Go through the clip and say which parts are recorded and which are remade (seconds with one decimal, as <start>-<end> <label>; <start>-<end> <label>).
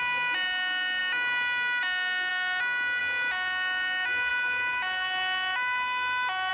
0.0-6.5 recorded